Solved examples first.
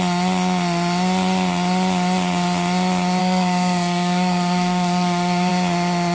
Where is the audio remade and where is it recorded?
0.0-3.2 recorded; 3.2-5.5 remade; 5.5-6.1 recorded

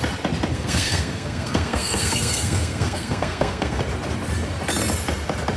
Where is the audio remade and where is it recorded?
0.0-0.5 recorded; 0.5-3.8 remade; 3.8-5.6 recorded

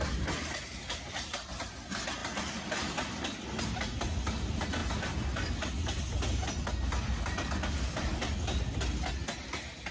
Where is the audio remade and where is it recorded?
0.0-9.9 recorded